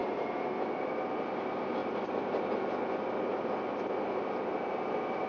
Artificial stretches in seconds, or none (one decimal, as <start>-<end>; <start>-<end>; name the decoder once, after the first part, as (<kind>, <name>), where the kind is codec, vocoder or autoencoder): none

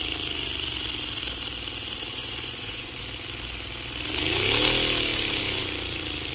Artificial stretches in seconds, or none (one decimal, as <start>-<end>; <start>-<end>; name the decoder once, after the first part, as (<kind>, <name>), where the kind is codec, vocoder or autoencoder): 2.1-3.0 (vocoder, Vocos)

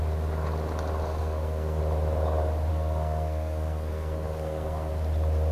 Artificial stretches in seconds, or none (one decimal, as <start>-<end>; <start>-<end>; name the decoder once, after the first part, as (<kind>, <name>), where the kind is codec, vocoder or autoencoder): 1.2-1.8 (codec, SNAC); 2.7-4.9

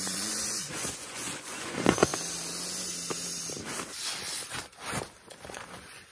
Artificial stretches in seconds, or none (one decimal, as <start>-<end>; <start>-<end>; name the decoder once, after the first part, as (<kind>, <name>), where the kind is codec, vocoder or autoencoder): 0.0-2.1 (vocoder, Vocos); 5.3-6.1